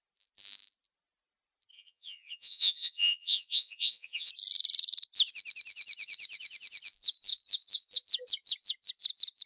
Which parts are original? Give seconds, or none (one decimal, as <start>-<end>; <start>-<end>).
0.0-1.7; 4.3-9.5